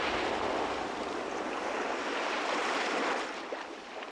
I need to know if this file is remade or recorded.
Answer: remade